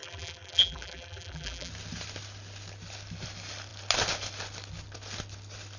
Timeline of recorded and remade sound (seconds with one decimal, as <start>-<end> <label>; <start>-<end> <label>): 0.0-1.7 remade; 1.7-5.8 recorded